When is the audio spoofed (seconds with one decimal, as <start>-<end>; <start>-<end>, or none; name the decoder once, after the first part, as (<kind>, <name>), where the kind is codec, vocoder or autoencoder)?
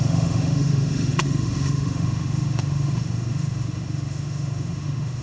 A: 0.0-5.2 (autoencoder, DAC-VAE)